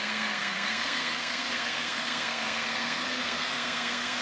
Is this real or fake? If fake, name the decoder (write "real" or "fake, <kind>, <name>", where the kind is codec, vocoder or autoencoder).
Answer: fake, codec, SNAC